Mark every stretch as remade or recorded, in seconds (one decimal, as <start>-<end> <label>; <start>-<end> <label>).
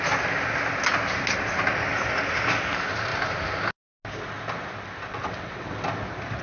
0.0-5.1 recorded; 5.1-5.7 remade; 5.7-6.4 recorded